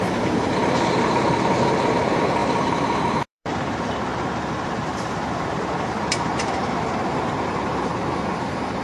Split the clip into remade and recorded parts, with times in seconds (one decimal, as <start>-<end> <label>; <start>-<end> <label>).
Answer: 0.0-7.9 remade; 7.9-8.4 recorded; 8.4-8.8 remade